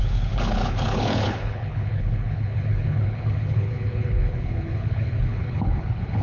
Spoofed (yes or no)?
yes